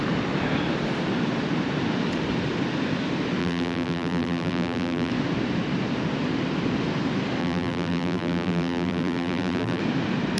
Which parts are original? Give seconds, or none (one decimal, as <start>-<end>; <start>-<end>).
0.0-3.4; 5.1-7.4; 9.8-10.4